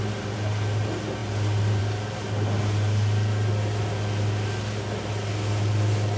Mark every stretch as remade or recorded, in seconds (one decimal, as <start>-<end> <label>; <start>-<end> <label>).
0.0-6.2 recorded